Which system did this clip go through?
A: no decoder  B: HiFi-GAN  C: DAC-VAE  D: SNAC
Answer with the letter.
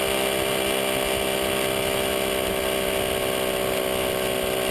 A